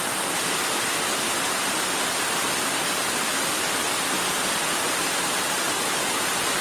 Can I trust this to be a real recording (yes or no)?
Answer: yes